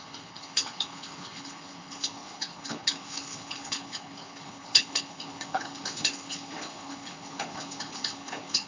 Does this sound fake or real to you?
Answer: fake